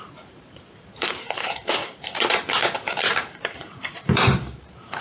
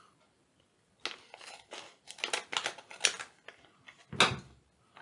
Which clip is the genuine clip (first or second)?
second